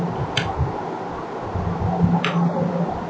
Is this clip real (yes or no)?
yes